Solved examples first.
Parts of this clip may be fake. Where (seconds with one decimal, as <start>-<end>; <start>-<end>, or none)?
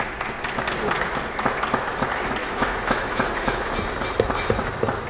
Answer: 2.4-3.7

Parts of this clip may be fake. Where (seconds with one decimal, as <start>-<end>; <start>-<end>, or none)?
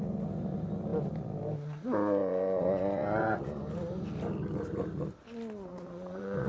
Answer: 2.2-3.6; 5.7-6.5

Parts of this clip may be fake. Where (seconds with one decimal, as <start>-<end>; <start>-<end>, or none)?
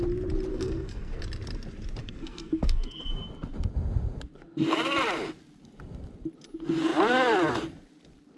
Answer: 0.5-1.2; 2.0-3.1